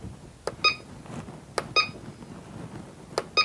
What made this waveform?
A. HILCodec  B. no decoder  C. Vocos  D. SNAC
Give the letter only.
B